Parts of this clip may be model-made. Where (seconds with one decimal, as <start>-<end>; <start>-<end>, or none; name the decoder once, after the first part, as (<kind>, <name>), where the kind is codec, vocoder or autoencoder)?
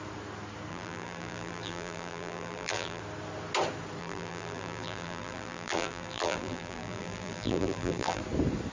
0.7-3.0 (vocoder, BigVGAN v2); 4.0-8.2